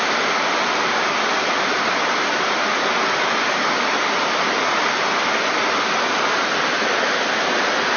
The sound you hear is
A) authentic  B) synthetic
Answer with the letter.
A